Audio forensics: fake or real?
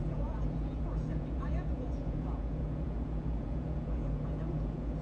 fake